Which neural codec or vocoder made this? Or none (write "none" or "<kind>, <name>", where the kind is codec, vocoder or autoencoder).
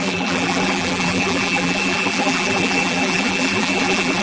vocoder, BigVGAN v2